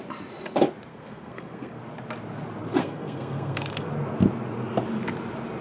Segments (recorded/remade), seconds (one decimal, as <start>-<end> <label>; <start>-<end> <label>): 0.0-0.9 recorded; 0.9-1.8 remade; 1.8-2.8 recorded; 2.8-3.9 remade; 3.9-5.6 recorded